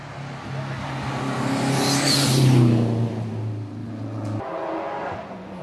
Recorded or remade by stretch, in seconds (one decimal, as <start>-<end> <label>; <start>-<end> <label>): 0.0-3.8 recorded; 3.8-5.6 remade